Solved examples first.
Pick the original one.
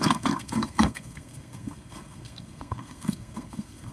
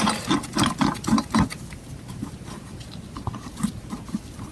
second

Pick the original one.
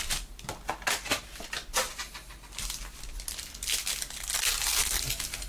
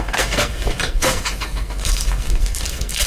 first